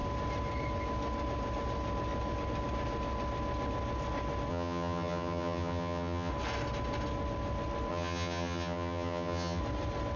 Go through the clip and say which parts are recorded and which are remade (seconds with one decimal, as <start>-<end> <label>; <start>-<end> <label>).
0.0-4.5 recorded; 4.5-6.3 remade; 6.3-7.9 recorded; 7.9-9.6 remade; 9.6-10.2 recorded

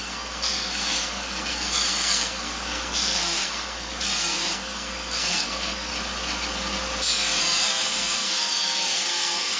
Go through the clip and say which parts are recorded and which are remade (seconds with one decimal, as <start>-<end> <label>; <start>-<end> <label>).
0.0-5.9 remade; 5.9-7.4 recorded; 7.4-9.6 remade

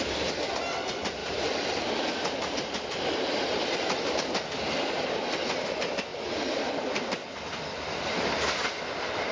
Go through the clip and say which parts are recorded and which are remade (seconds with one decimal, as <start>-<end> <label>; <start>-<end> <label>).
0.0-1.2 recorded; 1.2-4.1 remade; 4.1-9.3 recorded